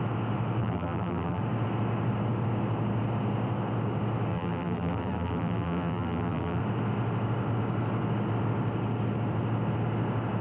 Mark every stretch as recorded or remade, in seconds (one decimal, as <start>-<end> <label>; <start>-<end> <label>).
0.0-0.6 recorded; 0.6-1.4 remade; 1.4-4.3 recorded; 4.3-6.6 remade; 6.6-10.4 recorded